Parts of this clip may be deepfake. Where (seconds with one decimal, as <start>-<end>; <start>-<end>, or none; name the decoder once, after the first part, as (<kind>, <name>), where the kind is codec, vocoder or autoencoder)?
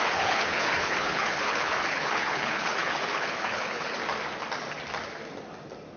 0.0-4.0 (codec, HILCodec)